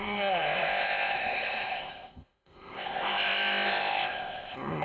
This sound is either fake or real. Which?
fake